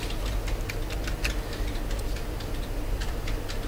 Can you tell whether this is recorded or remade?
recorded